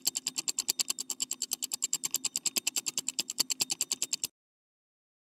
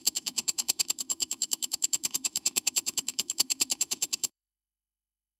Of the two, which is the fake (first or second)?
second